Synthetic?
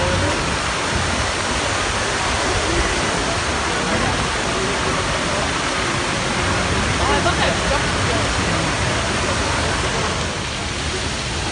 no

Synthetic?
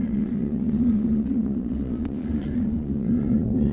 yes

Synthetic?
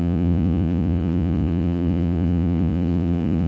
yes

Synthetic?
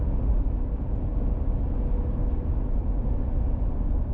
no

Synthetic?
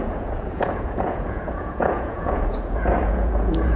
yes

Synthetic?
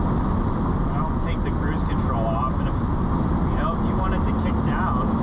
no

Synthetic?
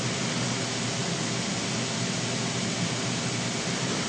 no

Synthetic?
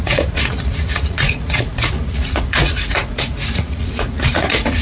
yes